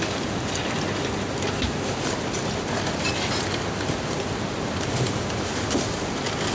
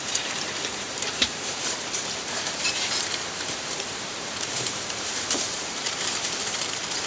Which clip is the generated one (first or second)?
second